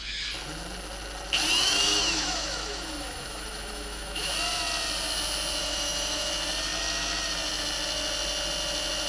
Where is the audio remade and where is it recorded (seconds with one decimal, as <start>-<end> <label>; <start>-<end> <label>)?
0.0-1.5 recorded; 1.5-4.3 remade; 4.3-5.6 recorded; 5.6-6.3 remade; 6.3-9.1 recorded